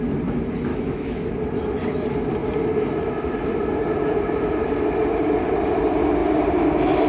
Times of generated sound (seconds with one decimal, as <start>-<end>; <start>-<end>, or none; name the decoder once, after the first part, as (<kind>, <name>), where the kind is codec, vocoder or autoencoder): 0.7-1.3 (autoencoder, DAC-VAE)